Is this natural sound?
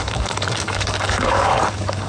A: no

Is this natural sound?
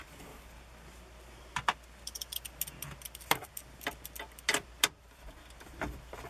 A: yes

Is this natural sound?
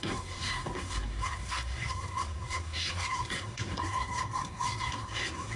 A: no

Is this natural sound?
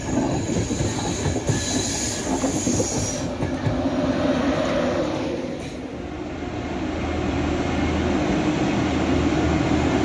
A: yes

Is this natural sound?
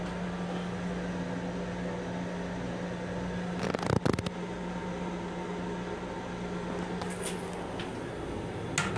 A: yes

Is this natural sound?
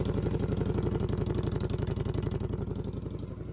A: yes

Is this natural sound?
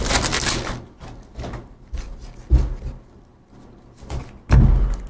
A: yes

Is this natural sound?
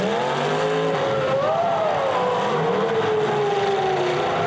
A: yes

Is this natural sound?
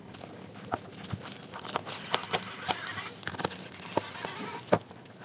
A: yes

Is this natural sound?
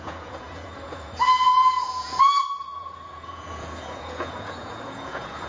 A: no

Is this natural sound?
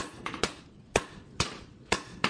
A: no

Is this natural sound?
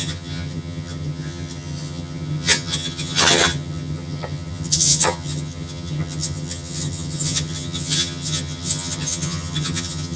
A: no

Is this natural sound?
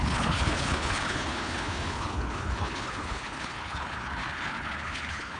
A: no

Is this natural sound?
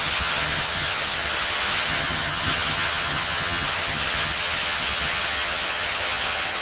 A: no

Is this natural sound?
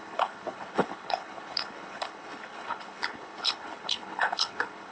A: no